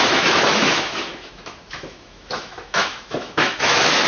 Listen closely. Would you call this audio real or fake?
fake